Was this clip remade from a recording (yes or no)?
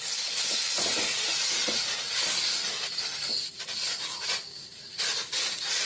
no